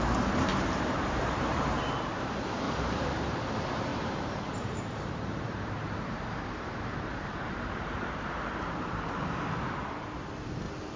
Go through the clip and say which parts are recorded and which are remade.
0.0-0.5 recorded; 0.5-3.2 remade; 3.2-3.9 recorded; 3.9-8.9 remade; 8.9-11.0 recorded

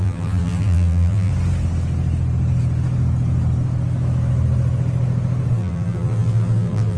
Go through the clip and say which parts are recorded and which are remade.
0.0-1.3 remade; 1.3-5.5 recorded; 5.5-7.0 remade